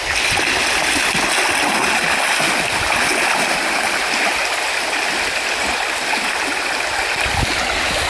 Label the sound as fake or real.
real